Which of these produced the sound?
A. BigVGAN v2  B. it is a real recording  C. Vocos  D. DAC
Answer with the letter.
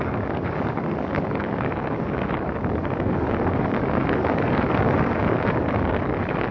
D